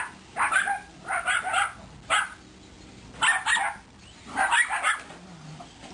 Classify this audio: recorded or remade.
recorded